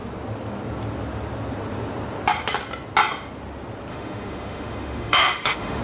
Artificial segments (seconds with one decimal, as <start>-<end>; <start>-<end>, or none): 3.9-5.8